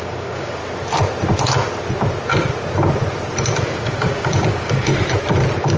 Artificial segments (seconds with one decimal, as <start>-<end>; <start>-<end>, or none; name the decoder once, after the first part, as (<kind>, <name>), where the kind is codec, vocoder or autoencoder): 0.0-0.6 (codec, DAC); 3.8-4.9